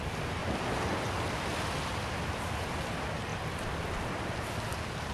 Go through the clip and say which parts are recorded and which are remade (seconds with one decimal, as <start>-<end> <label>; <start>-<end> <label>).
0.0-0.4 recorded; 0.4-2.2 remade; 2.2-3.3 recorded; 3.3-4.5 remade; 4.5-5.1 recorded